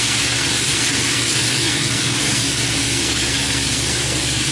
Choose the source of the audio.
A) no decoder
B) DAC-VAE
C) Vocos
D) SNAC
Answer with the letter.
D